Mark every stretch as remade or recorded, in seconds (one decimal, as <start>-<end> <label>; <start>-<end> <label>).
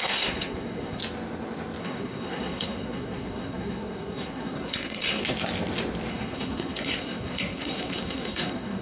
0.0-1.0 remade; 1.0-1.8 recorded; 1.8-5.2 remade; 5.2-6.1 recorded; 6.1-8.8 remade